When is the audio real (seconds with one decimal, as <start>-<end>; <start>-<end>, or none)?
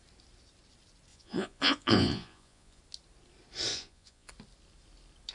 0.0-1.1; 2.8-3.7; 4.3-5.3